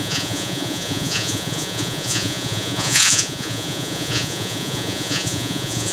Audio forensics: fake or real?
fake